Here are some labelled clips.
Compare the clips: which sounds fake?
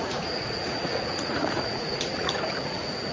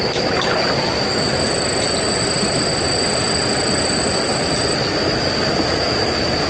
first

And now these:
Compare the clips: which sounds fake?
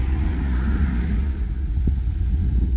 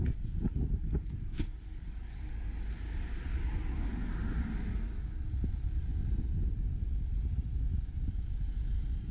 first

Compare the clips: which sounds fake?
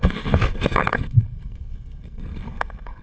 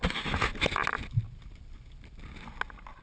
first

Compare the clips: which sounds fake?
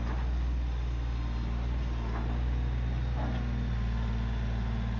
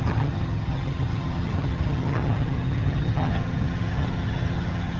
second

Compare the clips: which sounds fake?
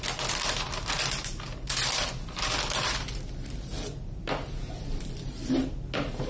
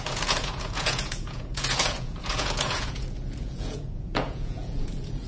second